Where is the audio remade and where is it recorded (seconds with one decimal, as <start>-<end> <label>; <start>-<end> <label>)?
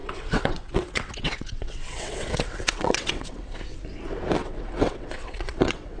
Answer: 0.0-3.6 remade; 3.6-4.4 recorded; 4.4-6.0 remade